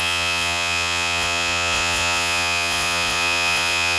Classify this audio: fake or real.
fake